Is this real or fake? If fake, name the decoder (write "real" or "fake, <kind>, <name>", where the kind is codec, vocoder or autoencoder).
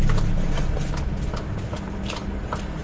real